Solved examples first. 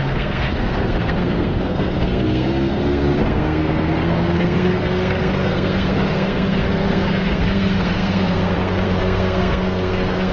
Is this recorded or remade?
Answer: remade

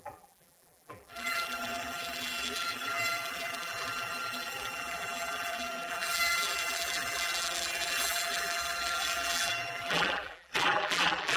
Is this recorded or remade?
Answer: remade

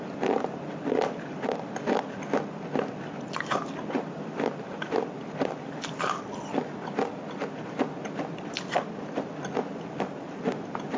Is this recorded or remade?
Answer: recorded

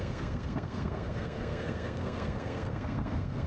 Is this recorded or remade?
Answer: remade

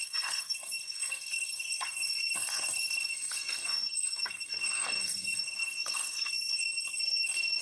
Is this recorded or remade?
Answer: remade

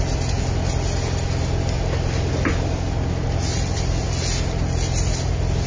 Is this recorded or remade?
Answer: recorded